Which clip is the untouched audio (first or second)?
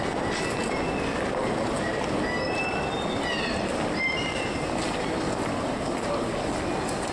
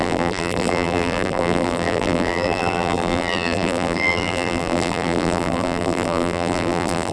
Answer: first